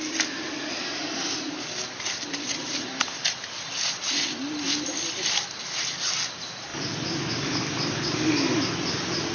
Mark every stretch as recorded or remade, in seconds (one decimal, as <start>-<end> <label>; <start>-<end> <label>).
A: 0.0-2.3 recorded; 2.3-5.8 remade; 5.8-9.3 recorded